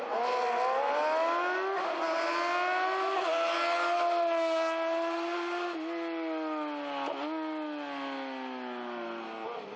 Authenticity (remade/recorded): recorded